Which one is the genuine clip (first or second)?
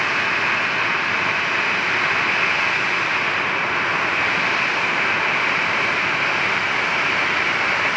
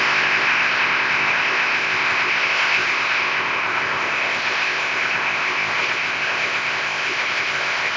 first